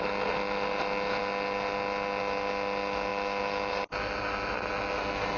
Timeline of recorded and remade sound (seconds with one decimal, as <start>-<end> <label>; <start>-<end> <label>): 0.0-5.4 recorded